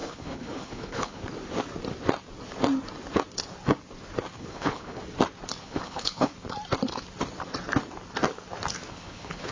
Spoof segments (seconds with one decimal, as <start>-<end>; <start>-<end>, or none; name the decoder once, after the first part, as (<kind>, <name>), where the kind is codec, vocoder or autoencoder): 0.0-1.2 (codec, HILCodec); 4.4-5.0; 5.6-6.3; 8.9-9.5